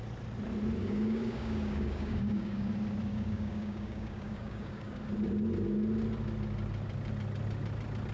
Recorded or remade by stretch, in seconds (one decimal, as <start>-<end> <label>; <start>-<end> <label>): 0.0-0.8 recorded; 0.8-2.7 remade; 2.7-3.1 recorded; 3.1-5.0 remade; 5.0-8.1 recorded